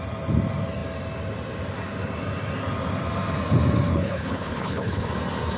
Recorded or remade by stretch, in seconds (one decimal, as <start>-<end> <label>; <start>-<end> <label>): 0.0-3.9 recorded; 3.9-5.1 remade; 5.1-5.6 recorded